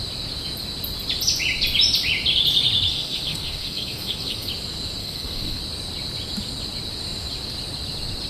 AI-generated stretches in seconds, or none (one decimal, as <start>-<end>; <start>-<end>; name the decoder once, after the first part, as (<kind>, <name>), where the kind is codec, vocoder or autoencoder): 2.9-4.5 (codec, SNAC); 5.0-5.6